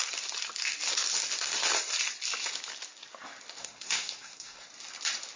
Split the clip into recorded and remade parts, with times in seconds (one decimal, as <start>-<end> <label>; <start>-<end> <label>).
0.0-3.6 recorded; 3.6-4.7 remade; 4.7-5.4 recorded

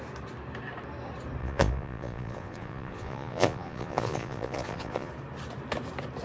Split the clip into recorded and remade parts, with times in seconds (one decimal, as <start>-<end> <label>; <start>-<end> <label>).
0.0-1.4 recorded; 1.4-5.1 remade; 5.1-6.2 recorded